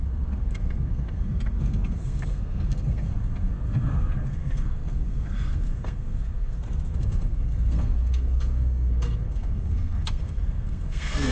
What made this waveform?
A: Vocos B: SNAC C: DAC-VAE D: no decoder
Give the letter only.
B